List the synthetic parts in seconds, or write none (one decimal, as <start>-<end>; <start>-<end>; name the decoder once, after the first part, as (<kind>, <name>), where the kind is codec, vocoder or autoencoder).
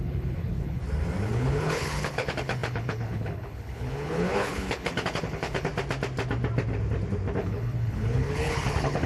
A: 0.0-0.8 (codec, HILCodec); 1.3-5.7; 7.4-9.1